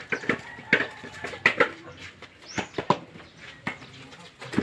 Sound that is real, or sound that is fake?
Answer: real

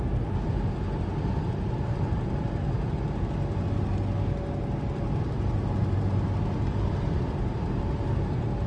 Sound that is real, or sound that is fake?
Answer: real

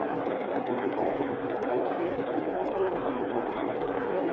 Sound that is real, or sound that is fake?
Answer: fake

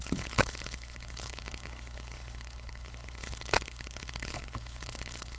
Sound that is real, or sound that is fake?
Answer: fake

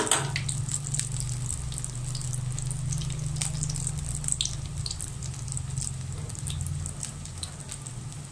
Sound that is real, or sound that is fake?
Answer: real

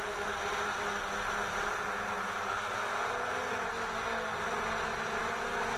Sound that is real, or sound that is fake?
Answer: real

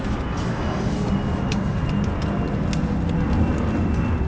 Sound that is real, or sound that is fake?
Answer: real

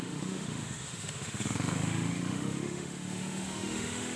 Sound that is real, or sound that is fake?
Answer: fake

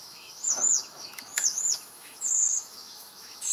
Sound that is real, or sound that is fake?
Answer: fake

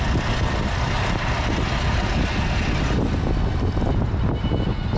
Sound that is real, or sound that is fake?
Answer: real